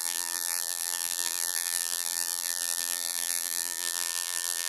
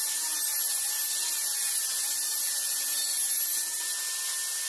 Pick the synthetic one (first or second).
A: first